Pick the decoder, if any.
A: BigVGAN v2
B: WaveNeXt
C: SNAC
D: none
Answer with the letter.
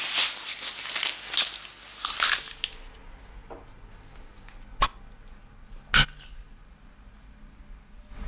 D